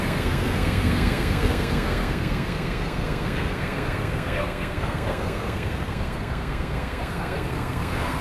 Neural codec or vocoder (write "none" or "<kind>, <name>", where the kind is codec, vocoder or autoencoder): codec, SNAC